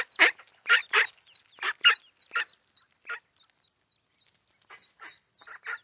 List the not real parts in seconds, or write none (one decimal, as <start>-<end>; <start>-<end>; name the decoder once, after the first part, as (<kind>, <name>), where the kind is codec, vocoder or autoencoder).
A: none